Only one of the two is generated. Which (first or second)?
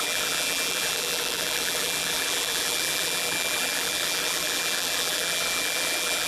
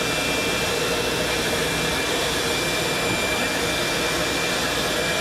first